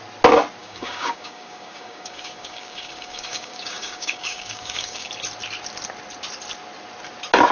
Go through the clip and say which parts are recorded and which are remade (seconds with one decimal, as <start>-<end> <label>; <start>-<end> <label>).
0.0-0.6 recorded; 0.6-5.1 remade; 5.1-7.5 recorded